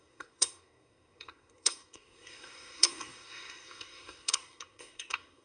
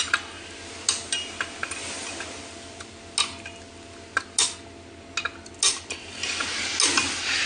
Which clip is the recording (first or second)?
second